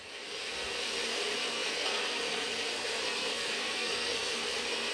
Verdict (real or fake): fake